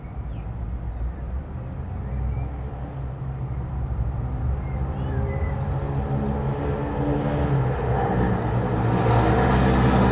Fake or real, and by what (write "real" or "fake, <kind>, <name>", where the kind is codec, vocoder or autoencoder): real